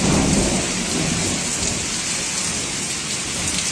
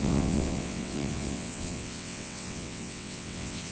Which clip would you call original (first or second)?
first